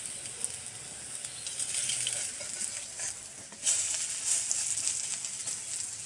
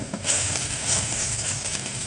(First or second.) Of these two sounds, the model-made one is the second